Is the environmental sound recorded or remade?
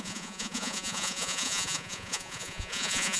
remade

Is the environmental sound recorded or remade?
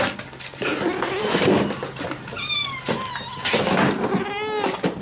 recorded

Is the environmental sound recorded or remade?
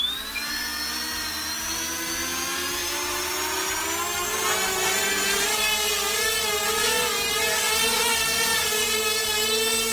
recorded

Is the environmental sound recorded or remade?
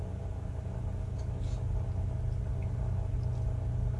recorded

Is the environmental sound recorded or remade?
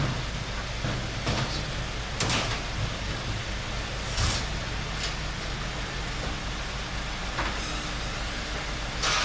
recorded